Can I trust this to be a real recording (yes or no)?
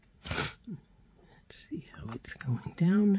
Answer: no